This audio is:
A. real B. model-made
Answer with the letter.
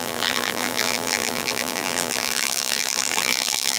B